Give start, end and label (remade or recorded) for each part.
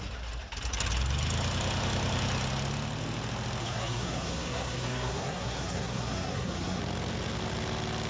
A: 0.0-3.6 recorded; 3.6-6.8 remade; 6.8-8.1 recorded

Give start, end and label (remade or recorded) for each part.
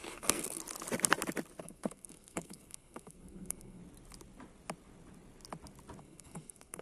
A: 0.0-0.6 remade; 0.6-1.6 recorded; 1.6-3.8 remade; 3.8-6.0 recorded; 6.0-6.8 remade